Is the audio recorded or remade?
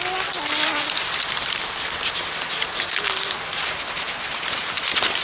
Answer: recorded